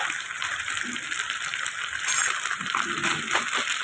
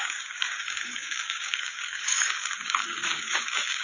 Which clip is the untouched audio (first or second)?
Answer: first